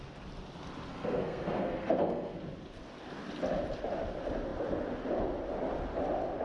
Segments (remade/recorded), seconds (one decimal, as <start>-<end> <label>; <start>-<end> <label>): 0.0-0.9 recorded; 0.9-2.4 remade; 2.4-6.4 recorded